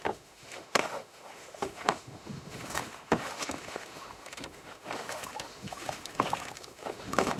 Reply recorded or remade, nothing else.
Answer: remade